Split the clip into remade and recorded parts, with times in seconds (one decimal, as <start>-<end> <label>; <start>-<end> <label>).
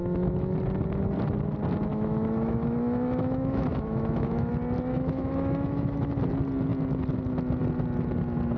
0.0-0.5 remade; 0.5-1.9 recorded; 1.9-4.5 remade; 4.5-4.9 recorded; 4.9-6.1 remade; 6.1-8.6 recorded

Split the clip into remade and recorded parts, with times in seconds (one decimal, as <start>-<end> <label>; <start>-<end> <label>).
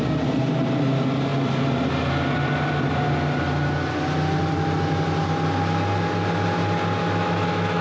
0.0-7.0 recorded; 7.0-7.8 remade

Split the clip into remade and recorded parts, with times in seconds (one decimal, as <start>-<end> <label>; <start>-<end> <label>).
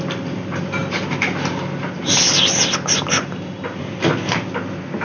0.0-5.0 recorded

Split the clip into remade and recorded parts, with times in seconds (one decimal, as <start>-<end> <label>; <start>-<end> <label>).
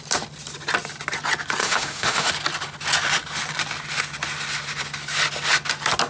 0.0-1.6 recorded; 1.6-2.3 remade; 2.3-6.1 recorded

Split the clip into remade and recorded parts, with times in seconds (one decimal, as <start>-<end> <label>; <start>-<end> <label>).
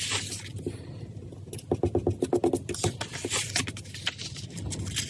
0.0-5.1 recorded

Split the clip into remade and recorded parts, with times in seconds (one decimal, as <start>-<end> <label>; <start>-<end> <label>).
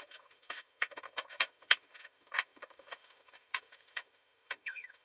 0.0-5.0 remade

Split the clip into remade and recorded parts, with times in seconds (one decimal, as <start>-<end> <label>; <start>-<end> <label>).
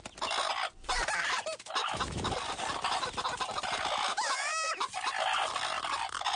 0.0-1.8 recorded; 1.8-2.3 remade; 2.3-4.1 recorded; 4.1-4.8 remade; 4.8-6.4 recorded